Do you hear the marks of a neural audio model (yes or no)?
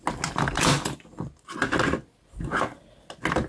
no